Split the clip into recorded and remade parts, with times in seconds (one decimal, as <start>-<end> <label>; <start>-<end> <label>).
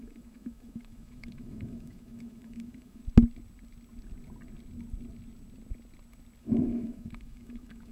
0.0-3.0 remade; 3.0-6.4 recorded; 6.4-7.9 remade